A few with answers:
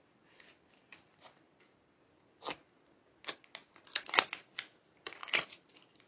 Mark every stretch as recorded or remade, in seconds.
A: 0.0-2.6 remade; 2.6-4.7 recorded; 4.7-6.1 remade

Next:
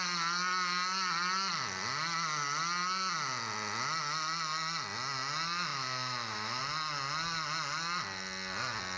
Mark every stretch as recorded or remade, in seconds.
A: 0.0-5.7 recorded; 5.7-6.6 remade; 6.6-9.0 recorded

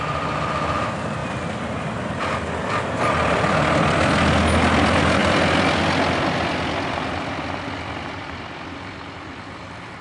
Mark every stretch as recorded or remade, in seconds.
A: 0.0-1.2 recorded; 1.2-2.2 remade; 2.2-5.2 recorded; 5.2-5.8 remade; 5.8-10.0 recorded

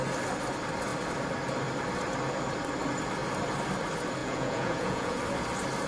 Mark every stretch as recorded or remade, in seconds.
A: 0.0-4.2 recorded; 4.2-5.2 remade; 5.2-5.9 recorded

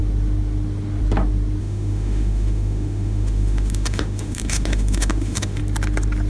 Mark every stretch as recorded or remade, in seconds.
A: 0.0-1.6 recorded; 1.6-5.6 remade; 5.6-6.3 recorded